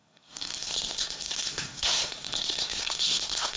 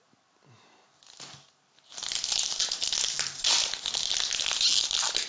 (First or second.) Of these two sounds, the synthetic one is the first